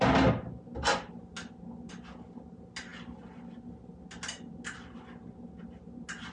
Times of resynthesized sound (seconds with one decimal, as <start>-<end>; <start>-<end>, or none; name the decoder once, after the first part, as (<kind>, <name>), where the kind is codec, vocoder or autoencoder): none